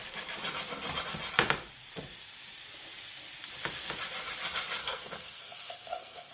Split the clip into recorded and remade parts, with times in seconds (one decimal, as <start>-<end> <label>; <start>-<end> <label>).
0.0-4.8 recorded; 4.8-6.3 remade